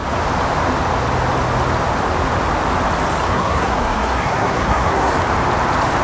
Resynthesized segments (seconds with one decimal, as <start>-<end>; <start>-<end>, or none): 3.3-5.1